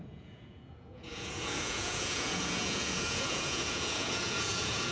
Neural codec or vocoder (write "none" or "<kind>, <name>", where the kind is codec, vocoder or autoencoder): vocoder, Vocos